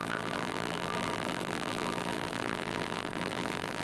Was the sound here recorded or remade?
remade